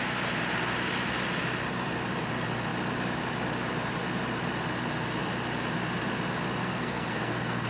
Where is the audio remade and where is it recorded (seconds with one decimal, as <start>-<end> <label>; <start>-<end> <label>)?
0.0-6.6 recorded; 6.6-7.7 remade